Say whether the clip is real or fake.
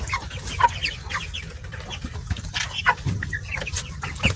real